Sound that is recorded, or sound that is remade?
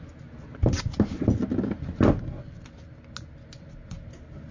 recorded